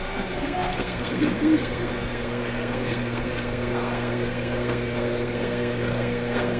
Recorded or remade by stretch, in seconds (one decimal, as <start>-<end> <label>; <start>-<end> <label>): 0.0-6.6 remade